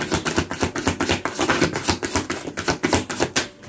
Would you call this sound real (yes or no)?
yes